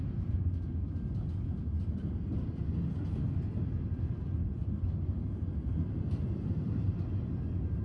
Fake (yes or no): no